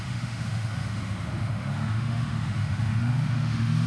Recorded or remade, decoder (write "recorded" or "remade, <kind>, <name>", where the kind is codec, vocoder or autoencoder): remade, autoencoder, DAC-VAE